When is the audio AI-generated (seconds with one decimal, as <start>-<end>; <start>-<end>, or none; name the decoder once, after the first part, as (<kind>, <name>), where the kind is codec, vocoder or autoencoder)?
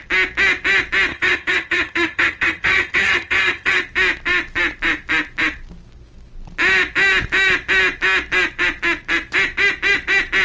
1.1-3.8 (vocoder, HiFi-GAN)